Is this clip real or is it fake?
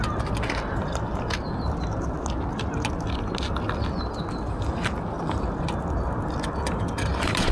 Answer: real